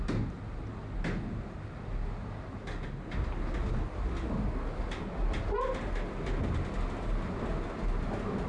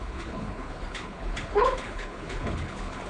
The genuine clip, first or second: first